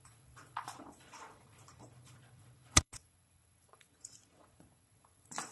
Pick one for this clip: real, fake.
fake